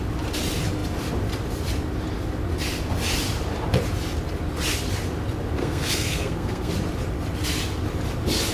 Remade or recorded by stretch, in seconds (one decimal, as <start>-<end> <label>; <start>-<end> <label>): 0.0-5.6 recorded; 5.6-6.7 remade; 6.7-8.5 recorded